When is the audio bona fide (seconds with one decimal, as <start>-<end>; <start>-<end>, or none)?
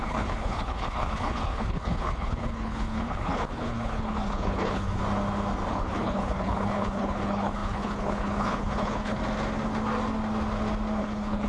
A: 5.0-5.7; 9.2-11.0